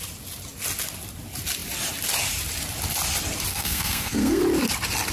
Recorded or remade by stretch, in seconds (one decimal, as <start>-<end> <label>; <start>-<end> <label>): 0.0-3.5 recorded; 3.5-4.4 remade; 4.4-5.1 recorded